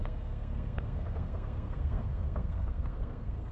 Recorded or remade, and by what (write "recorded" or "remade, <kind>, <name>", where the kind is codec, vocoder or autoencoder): remade, codec, SNAC